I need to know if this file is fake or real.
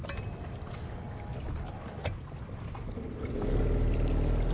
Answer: real